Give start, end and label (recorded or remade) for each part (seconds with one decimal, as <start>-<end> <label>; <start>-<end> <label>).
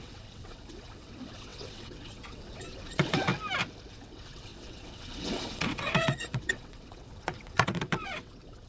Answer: 0.0-3.3 remade; 3.3-3.9 recorded; 3.9-8.7 remade